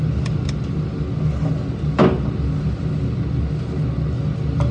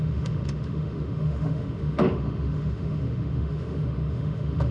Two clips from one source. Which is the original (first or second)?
first